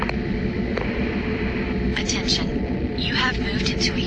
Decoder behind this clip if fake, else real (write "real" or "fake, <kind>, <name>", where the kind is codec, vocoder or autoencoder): fake, vocoder, BigVGAN v2